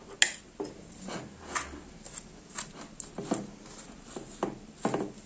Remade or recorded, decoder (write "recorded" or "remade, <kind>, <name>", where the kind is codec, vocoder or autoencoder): recorded